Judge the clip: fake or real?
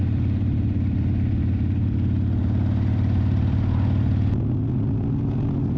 real